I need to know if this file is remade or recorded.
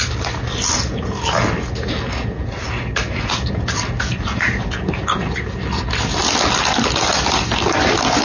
recorded